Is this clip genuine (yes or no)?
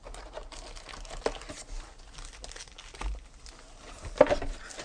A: yes